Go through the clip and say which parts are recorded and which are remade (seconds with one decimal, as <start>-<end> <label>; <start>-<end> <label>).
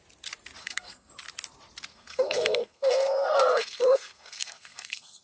0.0-0.6 recorded; 0.6-1.1 remade; 1.1-1.9 recorded; 1.9-5.2 remade